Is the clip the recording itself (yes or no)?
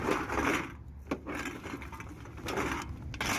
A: yes